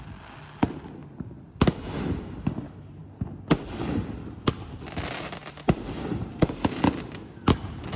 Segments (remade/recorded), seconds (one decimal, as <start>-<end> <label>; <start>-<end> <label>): 0.0-8.0 recorded